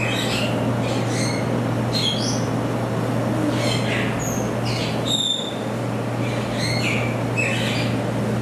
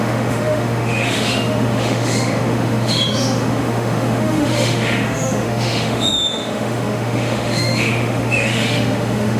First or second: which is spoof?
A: second